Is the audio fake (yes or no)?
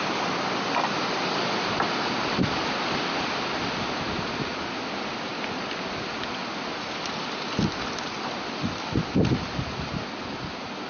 no